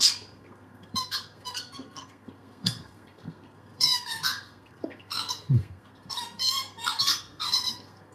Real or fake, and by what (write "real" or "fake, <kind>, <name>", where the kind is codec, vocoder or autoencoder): fake, codec, SNAC